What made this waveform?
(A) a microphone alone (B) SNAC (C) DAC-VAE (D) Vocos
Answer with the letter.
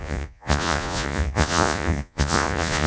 D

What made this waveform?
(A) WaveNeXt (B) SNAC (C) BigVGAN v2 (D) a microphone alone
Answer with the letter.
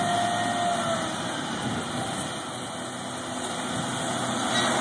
D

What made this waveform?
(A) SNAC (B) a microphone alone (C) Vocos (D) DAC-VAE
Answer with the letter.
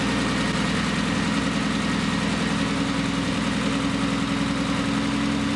B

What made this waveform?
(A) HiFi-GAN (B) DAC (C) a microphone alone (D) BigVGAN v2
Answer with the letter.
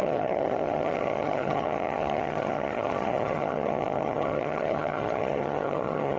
A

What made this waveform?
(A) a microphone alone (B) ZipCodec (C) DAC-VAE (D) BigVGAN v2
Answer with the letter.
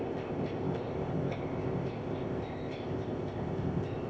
B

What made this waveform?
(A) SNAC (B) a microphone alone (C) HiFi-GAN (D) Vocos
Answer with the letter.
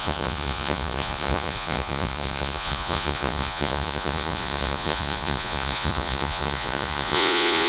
D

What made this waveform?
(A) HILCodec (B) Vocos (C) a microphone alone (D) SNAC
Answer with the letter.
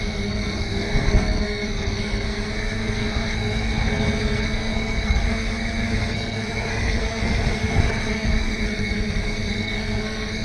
D